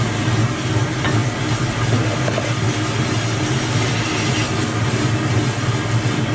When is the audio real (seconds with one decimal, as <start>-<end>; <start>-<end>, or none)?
0.0-6.3